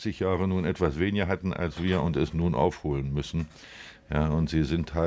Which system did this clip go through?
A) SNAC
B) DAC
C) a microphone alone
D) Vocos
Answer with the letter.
C